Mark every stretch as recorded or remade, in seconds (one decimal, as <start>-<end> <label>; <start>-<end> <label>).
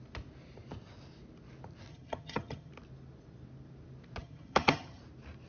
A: 0.0-1.9 recorded; 1.9-2.7 remade; 2.7-4.2 recorded; 4.2-5.0 remade; 5.0-5.5 recorded